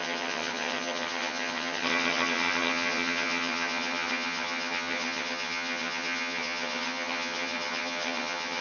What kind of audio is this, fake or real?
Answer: fake